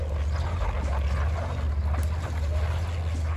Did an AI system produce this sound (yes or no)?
no